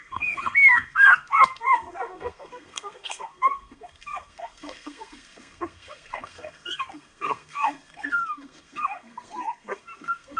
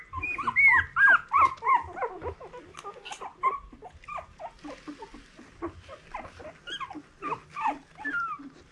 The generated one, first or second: first